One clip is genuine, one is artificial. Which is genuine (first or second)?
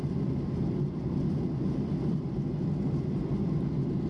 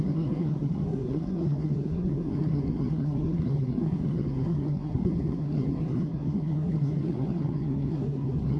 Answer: first